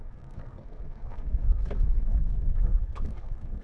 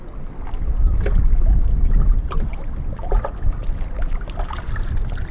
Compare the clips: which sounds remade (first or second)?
first